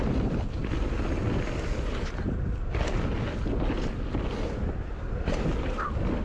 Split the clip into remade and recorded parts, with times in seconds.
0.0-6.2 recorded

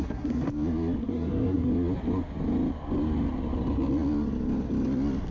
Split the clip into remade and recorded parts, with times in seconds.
0.0-0.5 remade; 0.5-1.0 recorded; 1.0-1.7 remade; 1.7-5.3 recorded

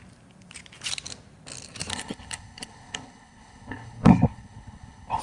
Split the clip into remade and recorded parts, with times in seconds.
0.0-1.9 recorded; 1.9-5.2 remade

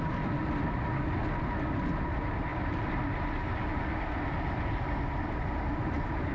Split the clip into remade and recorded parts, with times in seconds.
0.0-6.3 recorded

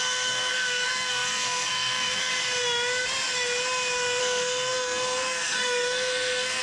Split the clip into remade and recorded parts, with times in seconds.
0.0-2.3 remade; 2.3-4.2 recorded; 4.2-6.6 remade

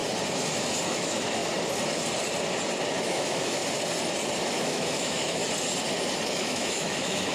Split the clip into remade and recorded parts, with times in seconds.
0.0-0.9 recorded; 0.9-1.4 remade; 1.4-3.0 recorded; 3.0-3.6 remade; 3.6-4.5 recorded; 4.5-5.4 remade; 5.4-6.4 recorded; 6.4-7.3 remade